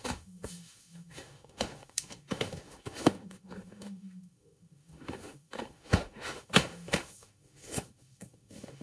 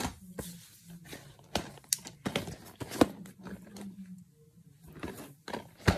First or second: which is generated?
first